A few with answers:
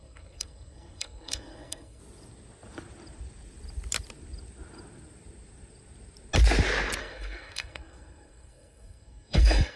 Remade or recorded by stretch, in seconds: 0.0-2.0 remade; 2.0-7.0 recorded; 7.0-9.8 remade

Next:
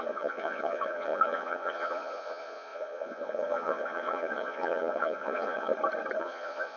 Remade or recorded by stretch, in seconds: 0.0-5.7 remade; 5.7-6.2 recorded; 6.2-6.8 remade

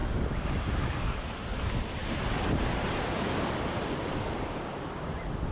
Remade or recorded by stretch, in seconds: 0.0-5.5 recorded

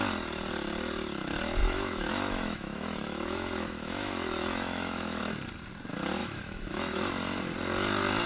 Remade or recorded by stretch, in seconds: 0.0-1.6 recorded; 1.6-5.2 remade; 5.2-6.2 recorded; 6.2-7.1 remade; 7.1-8.3 recorded